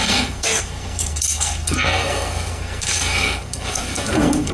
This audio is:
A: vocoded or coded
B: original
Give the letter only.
A